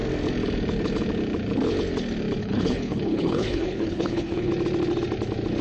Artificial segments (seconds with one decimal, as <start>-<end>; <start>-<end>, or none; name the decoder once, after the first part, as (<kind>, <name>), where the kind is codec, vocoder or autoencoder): 2.4-4.5 (codec, HILCodec)